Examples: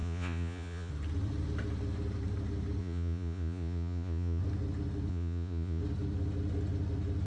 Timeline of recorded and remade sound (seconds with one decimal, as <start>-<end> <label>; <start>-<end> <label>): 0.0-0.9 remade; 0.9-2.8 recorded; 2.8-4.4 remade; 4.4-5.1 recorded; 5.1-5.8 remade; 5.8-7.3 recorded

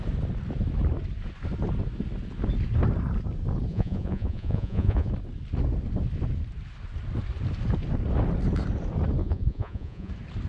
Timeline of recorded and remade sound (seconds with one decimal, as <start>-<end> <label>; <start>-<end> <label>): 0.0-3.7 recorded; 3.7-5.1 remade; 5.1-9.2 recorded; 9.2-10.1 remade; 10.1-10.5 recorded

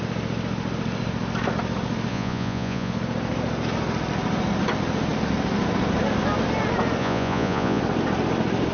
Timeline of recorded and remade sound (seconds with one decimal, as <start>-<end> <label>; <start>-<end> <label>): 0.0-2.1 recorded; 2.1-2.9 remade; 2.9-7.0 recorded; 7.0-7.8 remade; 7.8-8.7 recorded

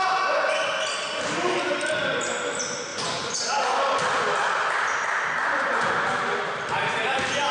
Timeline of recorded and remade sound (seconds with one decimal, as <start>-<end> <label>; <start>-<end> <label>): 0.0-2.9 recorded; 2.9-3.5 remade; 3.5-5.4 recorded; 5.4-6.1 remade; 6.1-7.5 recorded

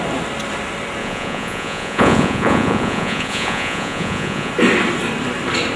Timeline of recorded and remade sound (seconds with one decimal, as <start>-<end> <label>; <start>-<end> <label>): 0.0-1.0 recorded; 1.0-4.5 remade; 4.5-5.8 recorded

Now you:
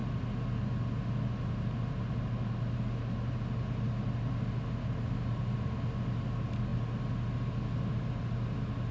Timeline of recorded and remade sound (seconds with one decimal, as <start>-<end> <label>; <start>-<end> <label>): 0.0-8.9 recorded